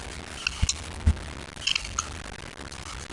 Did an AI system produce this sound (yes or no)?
no